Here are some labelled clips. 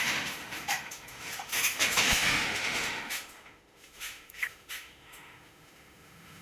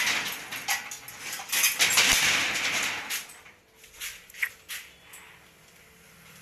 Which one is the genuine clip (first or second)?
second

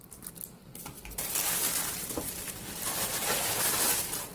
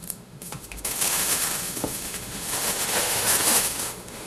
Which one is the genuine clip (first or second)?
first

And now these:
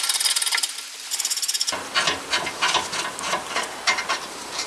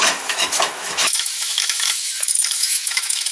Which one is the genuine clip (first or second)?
first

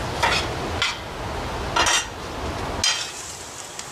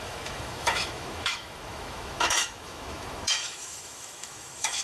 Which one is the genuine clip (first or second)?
first